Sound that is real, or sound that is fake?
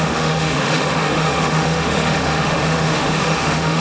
fake